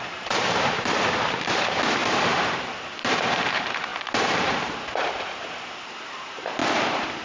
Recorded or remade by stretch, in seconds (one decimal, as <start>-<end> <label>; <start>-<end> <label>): 0.0-6.6 remade; 6.6-7.2 recorded